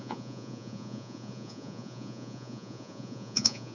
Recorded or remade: remade